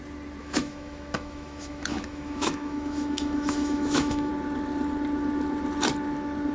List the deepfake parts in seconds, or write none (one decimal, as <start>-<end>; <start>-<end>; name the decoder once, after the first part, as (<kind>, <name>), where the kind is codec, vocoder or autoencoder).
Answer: 0.4-4.3 (autoencoder, DAC-VAE)